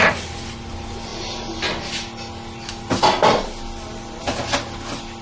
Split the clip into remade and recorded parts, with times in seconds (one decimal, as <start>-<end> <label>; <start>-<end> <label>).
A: 0.0-5.2 recorded